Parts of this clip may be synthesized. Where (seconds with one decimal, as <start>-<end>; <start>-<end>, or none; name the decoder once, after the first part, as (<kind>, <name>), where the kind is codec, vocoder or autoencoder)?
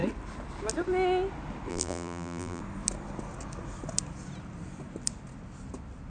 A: 1.7-2.6 (vocoder, BigVGAN v2)